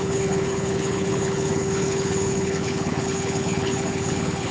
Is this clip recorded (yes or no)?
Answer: no